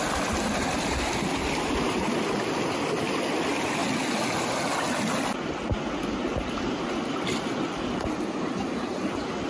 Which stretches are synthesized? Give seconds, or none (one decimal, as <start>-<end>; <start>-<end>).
none